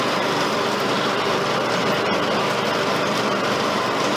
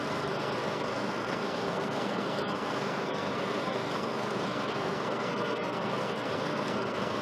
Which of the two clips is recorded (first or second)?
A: first